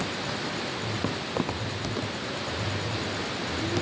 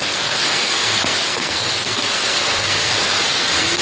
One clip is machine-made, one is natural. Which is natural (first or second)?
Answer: first